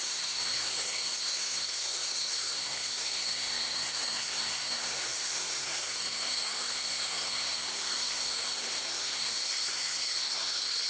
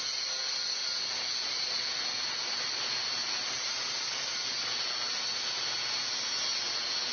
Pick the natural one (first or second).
second